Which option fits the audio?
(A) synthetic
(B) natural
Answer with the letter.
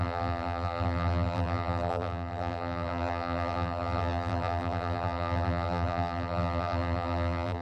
A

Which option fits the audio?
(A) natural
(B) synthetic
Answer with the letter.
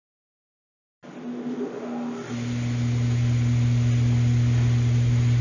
A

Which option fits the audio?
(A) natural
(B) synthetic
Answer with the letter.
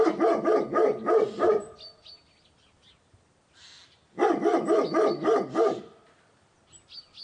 A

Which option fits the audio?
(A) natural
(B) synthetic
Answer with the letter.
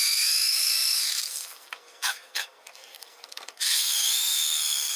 B